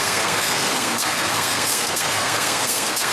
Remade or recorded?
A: remade